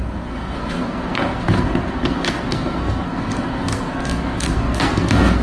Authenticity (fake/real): fake